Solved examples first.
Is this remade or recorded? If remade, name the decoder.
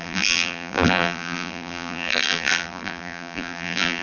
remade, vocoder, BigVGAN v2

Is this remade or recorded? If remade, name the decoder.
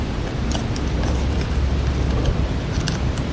recorded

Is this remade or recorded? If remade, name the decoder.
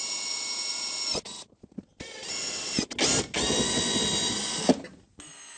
recorded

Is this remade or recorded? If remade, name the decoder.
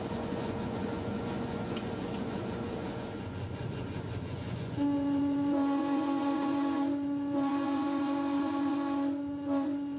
remade, vocoder, Vocos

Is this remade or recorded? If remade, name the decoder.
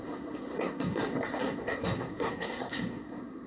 remade, codec, SNAC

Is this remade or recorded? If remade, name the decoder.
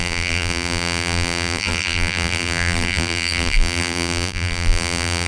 remade, vocoder, BigVGAN v2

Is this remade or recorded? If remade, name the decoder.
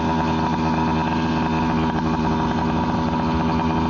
recorded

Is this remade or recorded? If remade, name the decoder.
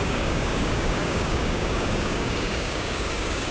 remade, codec, DAC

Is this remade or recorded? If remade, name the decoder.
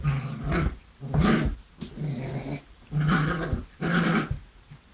recorded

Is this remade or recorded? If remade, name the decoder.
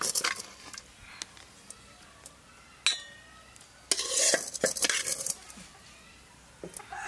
recorded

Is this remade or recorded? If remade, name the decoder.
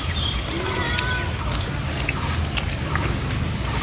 recorded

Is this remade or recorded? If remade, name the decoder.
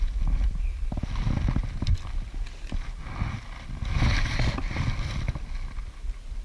recorded